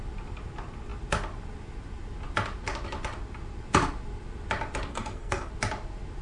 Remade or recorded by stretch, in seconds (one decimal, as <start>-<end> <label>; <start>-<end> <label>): 0.0-4.9 recorded; 4.9-5.5 remade; 5.5-6.2 recorded